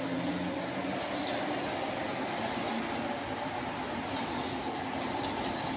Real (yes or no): yes